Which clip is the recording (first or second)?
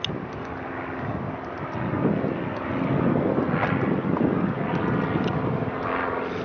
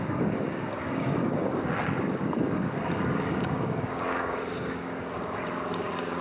first